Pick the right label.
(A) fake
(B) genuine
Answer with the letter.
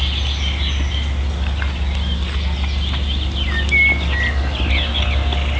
B